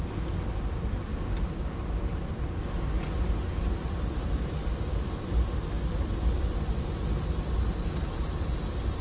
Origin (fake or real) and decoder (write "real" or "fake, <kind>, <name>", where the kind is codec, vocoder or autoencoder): real